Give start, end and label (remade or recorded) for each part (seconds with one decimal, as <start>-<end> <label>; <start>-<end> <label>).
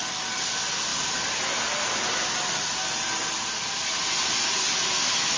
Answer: 0.0-5.4 recorded